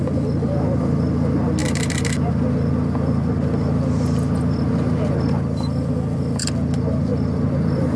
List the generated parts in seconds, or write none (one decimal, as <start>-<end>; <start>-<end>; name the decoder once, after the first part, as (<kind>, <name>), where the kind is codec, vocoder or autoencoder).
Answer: none